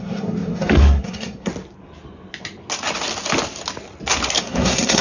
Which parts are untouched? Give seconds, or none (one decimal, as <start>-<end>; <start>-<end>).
1.5-4.4